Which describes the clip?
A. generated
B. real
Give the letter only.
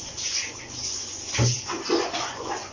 A